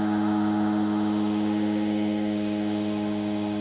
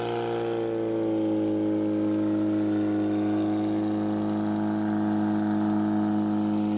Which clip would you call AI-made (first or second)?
first